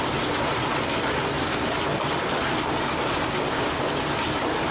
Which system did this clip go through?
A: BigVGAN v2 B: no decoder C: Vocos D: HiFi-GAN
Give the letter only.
B